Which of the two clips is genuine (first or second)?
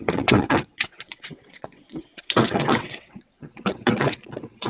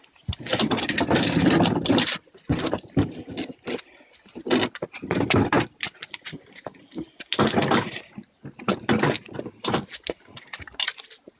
second